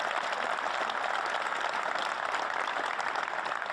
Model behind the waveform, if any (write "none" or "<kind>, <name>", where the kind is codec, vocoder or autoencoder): none